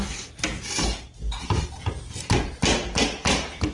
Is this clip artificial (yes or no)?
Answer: no